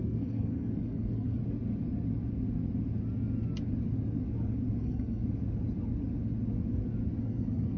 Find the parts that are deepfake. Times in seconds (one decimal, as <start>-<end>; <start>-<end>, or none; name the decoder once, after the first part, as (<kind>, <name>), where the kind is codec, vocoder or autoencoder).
0.0-1.4 (codec, SNAC); 4.8-5.2; 7.2-7.8